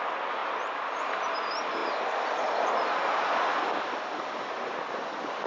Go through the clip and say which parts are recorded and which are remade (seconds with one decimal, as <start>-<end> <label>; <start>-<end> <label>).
0.0-5.5 recorded